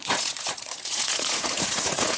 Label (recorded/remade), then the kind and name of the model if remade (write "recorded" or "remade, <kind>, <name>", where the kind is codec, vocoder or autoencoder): remade, vocoder, Vocos